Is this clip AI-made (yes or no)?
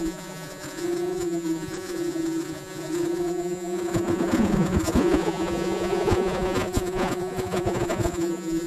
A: yes